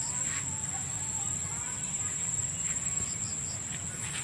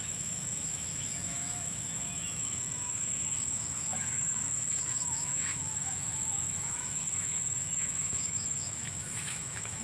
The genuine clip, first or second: first